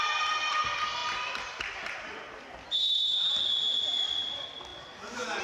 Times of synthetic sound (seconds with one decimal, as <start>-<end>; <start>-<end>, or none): none